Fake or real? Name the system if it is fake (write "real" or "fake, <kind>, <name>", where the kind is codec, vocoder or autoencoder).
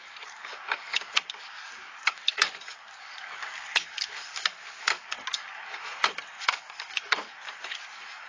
fake, codec, DAC